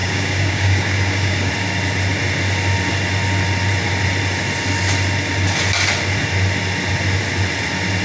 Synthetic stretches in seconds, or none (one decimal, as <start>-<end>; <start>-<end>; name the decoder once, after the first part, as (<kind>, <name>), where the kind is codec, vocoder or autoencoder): 0.0-1.5 (codec, DAC)

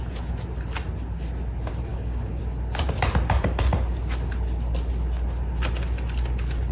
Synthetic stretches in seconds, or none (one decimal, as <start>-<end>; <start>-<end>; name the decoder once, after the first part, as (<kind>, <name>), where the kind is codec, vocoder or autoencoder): 1.9-2.4 (codec, DAC)

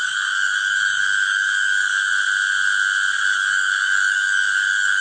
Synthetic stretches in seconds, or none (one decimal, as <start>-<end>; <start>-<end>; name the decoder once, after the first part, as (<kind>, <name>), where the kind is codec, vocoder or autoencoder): 0.0-2.1 (codec, DAC); 3.2-5.0

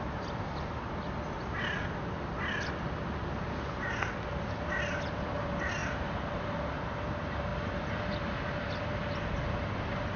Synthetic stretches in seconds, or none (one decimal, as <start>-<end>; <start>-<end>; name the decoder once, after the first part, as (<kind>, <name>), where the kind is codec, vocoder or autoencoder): none

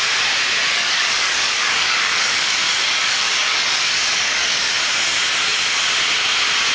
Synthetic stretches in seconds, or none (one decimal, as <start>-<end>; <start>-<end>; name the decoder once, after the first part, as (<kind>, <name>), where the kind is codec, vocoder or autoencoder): 0.7-4.7 (codec, DAC)